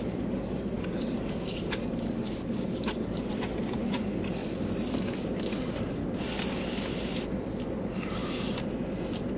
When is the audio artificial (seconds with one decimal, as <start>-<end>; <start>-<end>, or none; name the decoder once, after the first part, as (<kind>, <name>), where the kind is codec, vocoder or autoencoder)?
0.0-3.3 (codec, DAC); 3.9-6.0; 7.6-8.2